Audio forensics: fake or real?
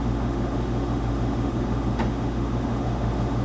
fake